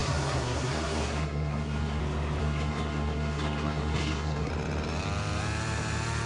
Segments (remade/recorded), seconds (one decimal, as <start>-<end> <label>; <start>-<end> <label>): 0.0-2.0 remade; 2.0-2.4 recorded; 2.4-4.5 remade; 4.5-6.3 recorded